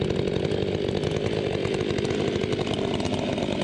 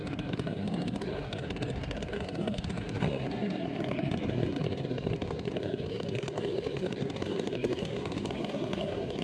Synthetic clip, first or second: second